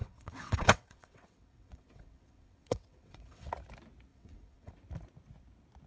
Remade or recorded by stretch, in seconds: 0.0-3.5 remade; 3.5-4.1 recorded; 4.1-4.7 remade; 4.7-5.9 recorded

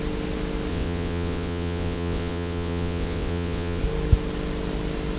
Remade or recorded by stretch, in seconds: 0.0-0.7 recorded; 0.7-3.8 remade; 3.8-5.2 recorded